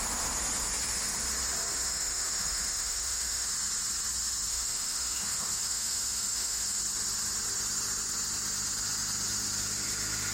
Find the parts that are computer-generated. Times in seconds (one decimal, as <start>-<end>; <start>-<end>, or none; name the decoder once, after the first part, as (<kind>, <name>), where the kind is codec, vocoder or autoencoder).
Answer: 1.7-3.5 (autoencoder, DAC-VAE); 4.5-6.8